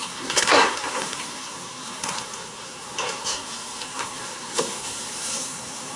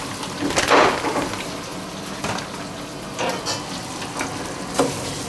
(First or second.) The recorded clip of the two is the second